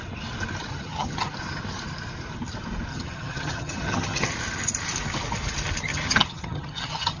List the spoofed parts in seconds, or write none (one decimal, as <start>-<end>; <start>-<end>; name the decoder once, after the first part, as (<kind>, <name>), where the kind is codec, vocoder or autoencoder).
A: 0.7-1.3 (vocoder, HiFi-GAN); 2.9-4.3; 5.9-7.2